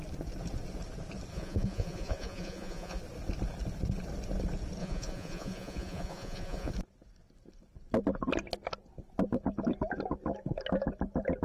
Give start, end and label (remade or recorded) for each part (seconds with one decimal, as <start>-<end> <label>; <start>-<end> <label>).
0.0-1.3 recorded; 1.3-3.0 remade; 3.0-4.8 recorded; 4.8-6.7 remade; 6.7-11.4 recorded